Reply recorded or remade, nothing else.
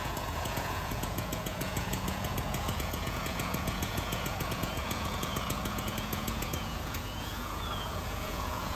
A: remade